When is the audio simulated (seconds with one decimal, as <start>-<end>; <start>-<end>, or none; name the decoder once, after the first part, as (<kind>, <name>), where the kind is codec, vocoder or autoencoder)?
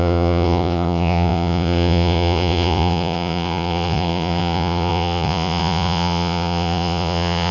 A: 0.0-7.5 (vocoder, Vocos)